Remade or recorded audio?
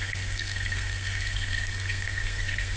remade